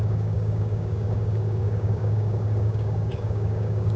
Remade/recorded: remade